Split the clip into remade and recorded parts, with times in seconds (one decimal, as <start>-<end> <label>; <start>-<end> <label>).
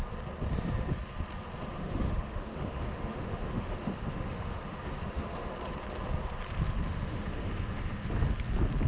0.0-1.8 recorded; 1.8-5.5 remade; 5.5-6.9 recorded; 6.9-8.0 remade; 8.0-8.9 recorded